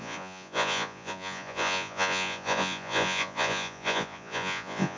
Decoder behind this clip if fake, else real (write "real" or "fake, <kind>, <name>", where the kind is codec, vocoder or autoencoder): fake, vocoder, Vocos